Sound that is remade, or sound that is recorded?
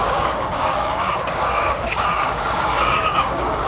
remade